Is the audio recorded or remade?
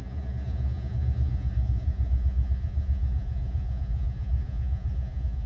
remade